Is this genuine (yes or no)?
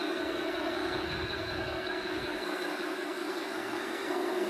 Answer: no